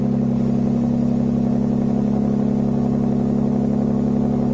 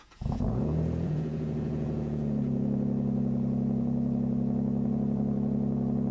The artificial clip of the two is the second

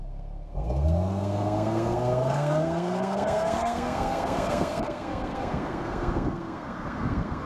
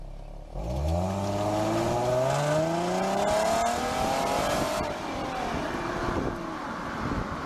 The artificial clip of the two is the first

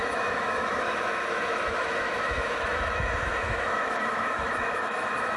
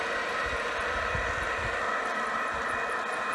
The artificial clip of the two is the first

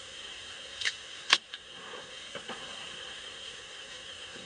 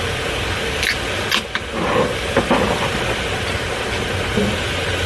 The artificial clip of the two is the first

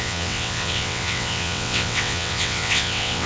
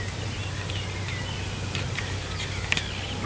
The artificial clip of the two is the first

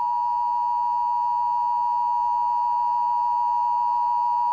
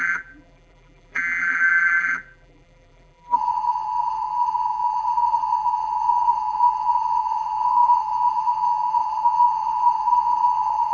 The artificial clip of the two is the second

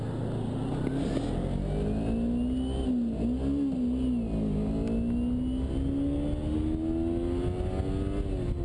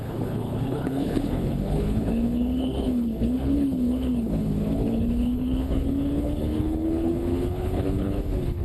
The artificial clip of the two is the second